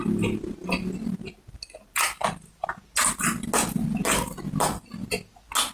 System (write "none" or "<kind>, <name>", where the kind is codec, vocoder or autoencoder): none